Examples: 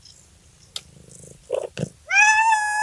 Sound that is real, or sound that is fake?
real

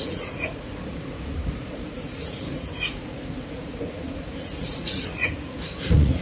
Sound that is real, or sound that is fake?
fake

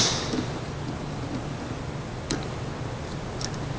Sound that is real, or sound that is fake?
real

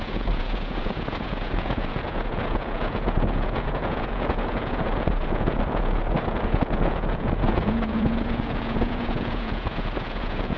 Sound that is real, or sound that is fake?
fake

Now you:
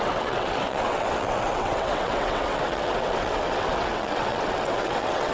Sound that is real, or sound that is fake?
fake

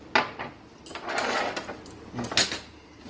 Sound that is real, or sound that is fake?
real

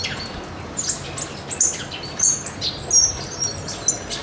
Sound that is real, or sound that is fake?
real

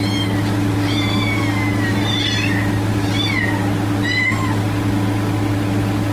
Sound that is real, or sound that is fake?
real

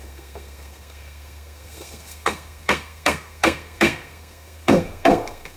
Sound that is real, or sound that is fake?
fake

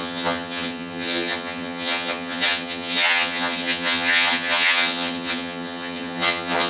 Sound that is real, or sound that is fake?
fake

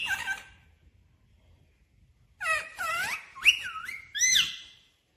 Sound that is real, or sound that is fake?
real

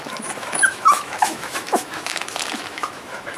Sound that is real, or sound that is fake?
fake